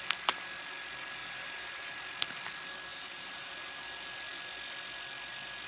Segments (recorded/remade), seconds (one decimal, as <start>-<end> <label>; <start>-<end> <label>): 0.0-1.2 recorded; 1.2-1.9 remade; 1.9-2.9 recorded; 2.9-3.5 remade; 3.5-5.7 recorded